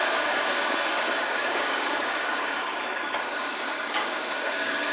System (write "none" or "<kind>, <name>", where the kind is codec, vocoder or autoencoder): codec, DAC